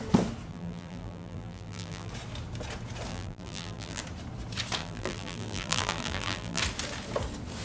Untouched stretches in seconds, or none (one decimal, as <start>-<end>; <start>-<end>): 0.0-0.5; 2.1-3.1; 4.0-4.8; 6.6-7.6